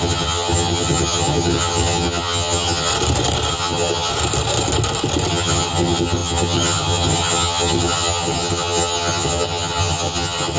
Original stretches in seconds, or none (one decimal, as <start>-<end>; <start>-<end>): 2.9-3.5; 4.1-5.3